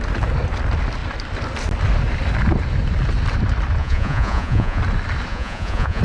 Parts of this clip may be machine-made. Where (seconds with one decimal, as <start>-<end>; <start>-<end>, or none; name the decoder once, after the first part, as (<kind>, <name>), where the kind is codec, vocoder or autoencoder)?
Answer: 3.8-4.8 (vocoder, Vocos); 5.3-6.0